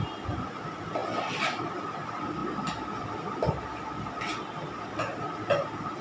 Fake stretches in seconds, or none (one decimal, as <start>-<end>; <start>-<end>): 1.0-1.7